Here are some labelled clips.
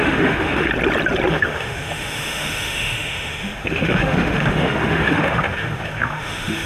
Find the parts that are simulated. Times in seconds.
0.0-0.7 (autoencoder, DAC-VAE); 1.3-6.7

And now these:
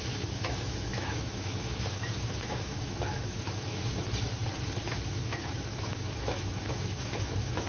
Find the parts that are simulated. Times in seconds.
0.0-3.9 (autoencoder, DAC-VAE); 4.8-7.7

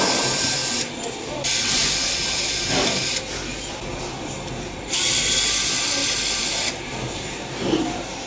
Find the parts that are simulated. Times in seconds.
none

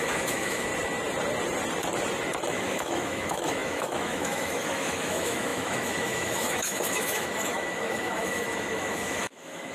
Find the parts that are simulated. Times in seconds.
0.0-0.7 (autoencoder, DAC-VAE); 2.5-9.7